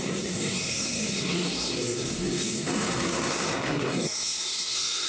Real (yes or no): no